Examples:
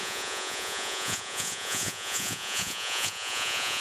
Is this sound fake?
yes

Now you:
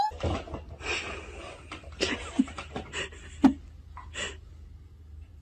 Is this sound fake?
no